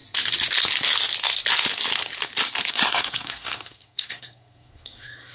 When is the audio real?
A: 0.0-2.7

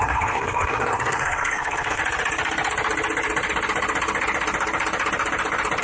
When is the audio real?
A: 2.0-5.8

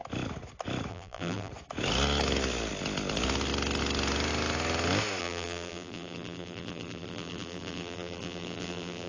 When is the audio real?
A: 0.0-0.9; 1.5-5.2